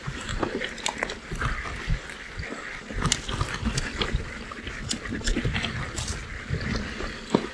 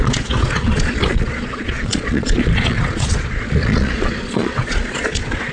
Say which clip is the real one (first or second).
first